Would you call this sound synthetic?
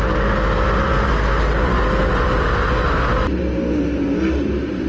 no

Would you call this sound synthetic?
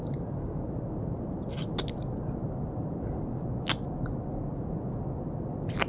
no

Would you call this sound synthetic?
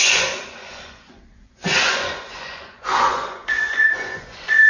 yes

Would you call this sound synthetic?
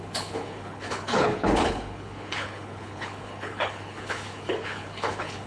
yes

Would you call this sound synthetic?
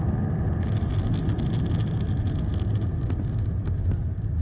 no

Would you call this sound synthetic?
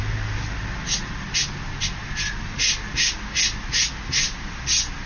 no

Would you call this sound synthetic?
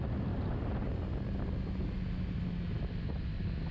no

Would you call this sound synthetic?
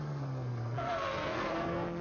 yes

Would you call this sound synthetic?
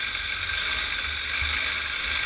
no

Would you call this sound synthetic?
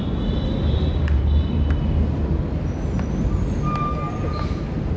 no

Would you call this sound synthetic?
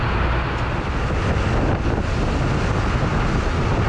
no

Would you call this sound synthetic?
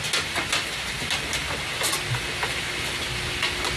no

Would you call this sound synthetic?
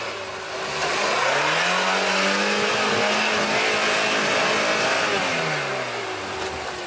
no